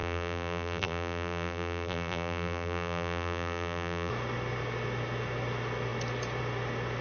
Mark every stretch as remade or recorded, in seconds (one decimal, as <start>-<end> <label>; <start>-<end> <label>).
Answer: 0.0-4.1 remade; 4.1-7.0 recorded